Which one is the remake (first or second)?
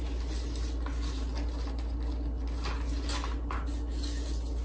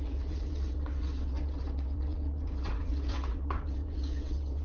second